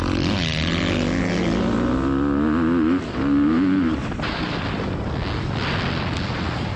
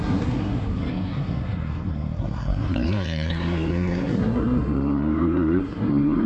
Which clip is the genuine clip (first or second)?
first